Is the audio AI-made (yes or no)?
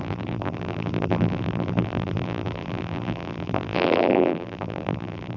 yes